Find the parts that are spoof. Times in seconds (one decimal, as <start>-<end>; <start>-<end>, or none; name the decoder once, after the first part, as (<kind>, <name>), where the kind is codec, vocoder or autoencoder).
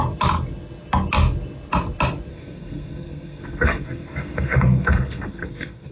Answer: 2.3-5.9 (codec, SNAC)